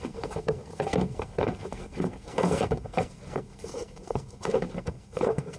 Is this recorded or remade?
remade